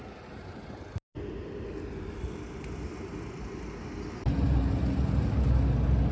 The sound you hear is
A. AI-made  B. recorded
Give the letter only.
B